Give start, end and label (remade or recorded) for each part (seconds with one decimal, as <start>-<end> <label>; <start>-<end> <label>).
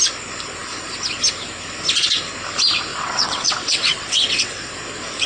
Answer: 0.0-2.9 recorded; 2.9-4.7 remade; 4.7-5.3 recorded